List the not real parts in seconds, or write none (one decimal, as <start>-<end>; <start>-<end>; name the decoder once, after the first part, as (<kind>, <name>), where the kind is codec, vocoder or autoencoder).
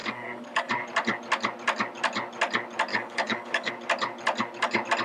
0.0-0.7 (codec, DAC); 2.9-3.7